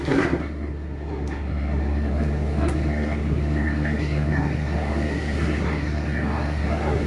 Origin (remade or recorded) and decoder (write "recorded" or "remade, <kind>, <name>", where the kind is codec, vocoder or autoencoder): remade, codec, SNAC